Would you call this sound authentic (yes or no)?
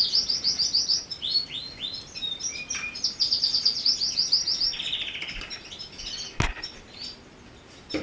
yes